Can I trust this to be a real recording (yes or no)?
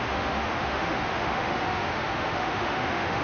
no